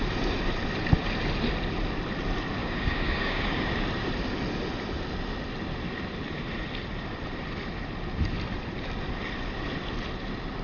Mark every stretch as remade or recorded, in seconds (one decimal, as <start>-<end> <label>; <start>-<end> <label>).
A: 0.0-2.6 recorded; 2.6-3.7 remade; 3.7-10.6 recorded